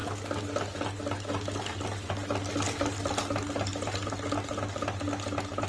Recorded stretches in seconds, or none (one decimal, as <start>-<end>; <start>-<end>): 0.0-5.7